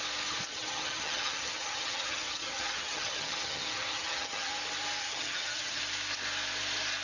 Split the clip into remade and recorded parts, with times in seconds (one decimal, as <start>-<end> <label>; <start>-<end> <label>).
0.0-0.5 recorded; 0.5-4.5 remade; 4.5-5.0 recorded; 5.0-5.8 remade; 5.8-7.0 recorded